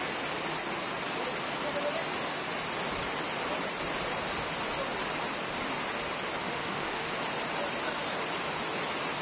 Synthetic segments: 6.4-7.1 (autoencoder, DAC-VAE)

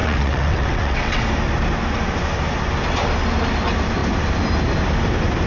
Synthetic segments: 0.0-1.2 (vocoder, WaveNeXt)

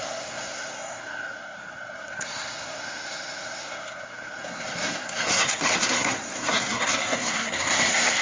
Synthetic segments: 0.0-8.2 (codec, SNAC)

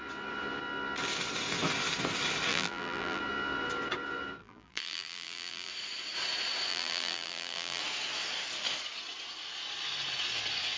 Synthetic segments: 2.5-3.2 (vocoder, BigVGAN v2); 4.4-5.7; 6.7-7.8